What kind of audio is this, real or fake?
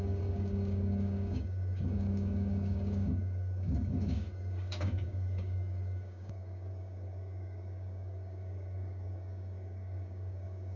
fake